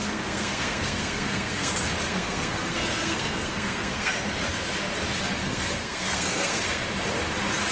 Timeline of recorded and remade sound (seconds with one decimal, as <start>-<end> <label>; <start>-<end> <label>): 0.0-1.7 remade; 1.7-2.1 recorded; 2.1-4.1 remade; 4.1-5.4 recorded; 5.4-6.8 remade; 6.8-7.7 recorded